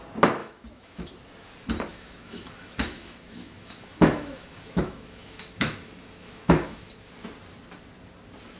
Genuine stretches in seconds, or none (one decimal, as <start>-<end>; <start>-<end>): 0.0-0.4; 1.1-1.9; 6.9-8.6

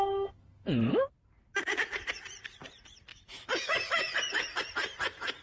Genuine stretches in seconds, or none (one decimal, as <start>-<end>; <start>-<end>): 0.0-3.1; 4.6-5.4

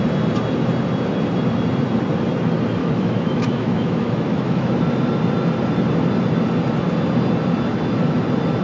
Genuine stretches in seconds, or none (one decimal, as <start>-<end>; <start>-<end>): 0.0-2.8; 4.8-8.6

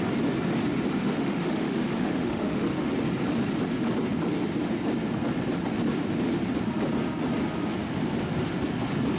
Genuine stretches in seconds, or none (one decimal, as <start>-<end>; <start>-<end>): 0.0-1.0; 2.9-9.2